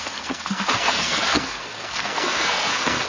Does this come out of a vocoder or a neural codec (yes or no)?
yes